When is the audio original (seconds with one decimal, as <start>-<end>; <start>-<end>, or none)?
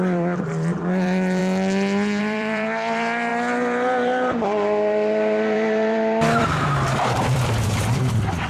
1.4-2.2